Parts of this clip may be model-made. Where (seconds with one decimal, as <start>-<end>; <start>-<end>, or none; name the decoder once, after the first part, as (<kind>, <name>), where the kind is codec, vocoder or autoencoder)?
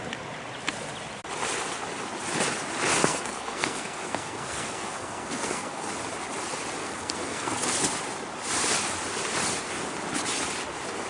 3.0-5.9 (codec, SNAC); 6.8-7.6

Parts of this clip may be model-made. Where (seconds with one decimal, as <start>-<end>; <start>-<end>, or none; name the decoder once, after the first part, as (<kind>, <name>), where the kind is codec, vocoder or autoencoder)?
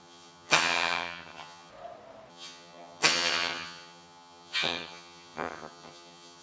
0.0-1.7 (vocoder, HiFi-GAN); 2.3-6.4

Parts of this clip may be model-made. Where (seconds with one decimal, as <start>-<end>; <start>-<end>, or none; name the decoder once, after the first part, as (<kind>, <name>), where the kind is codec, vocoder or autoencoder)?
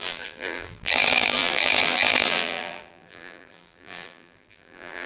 0.0-5.1 (vocoder, BigVGAN v2)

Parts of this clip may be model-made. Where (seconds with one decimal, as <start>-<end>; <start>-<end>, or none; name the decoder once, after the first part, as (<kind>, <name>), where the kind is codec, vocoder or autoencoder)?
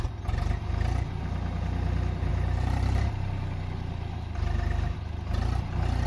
2.3-4.2 (vocoder, BigVGAN v2)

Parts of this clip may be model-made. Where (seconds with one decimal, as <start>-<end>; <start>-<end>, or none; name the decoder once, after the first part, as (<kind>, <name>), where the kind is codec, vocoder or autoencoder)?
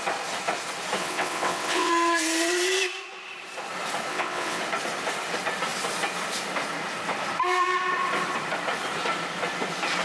1.0-1.9 (vocoder, WaveNeXt); 4.1-4.6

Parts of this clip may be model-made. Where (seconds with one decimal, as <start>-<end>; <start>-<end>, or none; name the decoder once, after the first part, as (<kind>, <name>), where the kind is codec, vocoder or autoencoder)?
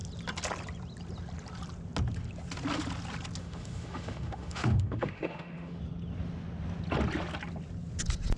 3.4-5.8 (autoencoder, DAC-VAE)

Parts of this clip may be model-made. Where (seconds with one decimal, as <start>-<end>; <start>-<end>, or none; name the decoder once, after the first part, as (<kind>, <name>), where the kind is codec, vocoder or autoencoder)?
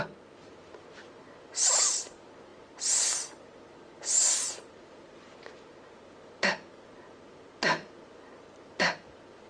none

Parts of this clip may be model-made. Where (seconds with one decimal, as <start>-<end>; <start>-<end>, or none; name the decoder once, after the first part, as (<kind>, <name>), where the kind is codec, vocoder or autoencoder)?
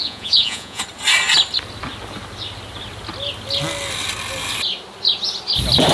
0.0-0.8 (vocoder, Vocos)